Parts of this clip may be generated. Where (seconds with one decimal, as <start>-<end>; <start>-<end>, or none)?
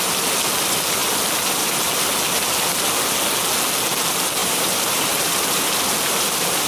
4.4-6.1